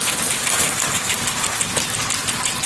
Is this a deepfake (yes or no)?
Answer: no